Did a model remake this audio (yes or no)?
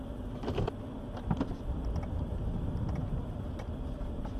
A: no